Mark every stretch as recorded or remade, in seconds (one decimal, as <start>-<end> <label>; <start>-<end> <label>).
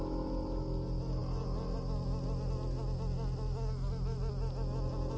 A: 0.0-5.2 recorded